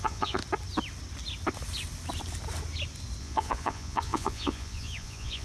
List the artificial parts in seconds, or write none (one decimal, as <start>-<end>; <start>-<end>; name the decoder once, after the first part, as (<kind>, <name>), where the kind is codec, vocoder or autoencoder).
0.0-0.4 (vocoder, Vocos); 3.2-5.4